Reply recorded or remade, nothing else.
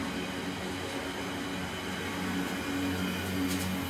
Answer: recorded